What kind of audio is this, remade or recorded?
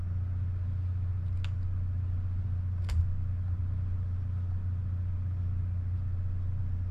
recorded